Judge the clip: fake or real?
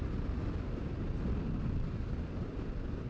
real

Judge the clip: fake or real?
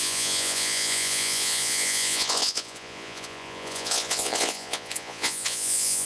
fake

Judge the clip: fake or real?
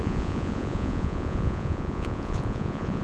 fake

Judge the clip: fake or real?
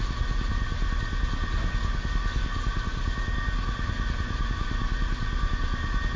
real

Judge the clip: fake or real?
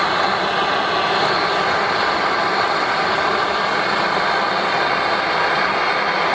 real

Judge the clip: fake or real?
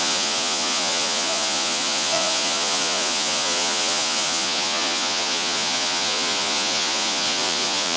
fake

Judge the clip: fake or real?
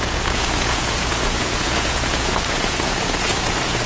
fake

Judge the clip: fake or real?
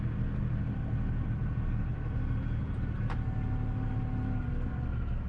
real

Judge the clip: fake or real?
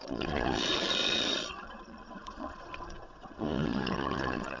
fake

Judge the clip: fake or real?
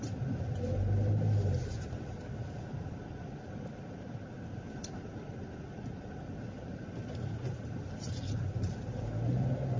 real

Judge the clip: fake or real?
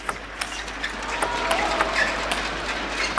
real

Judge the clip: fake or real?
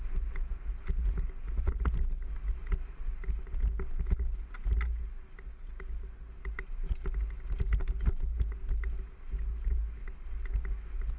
real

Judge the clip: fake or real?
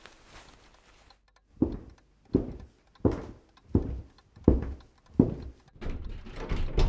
real